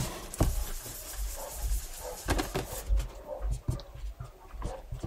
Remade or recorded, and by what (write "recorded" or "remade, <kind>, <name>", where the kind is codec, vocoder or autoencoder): recorded